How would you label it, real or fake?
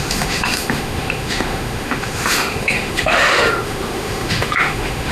fake